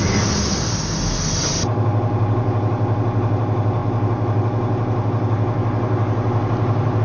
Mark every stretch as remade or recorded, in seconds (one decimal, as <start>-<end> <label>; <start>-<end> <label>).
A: 0.0-7.0 recorded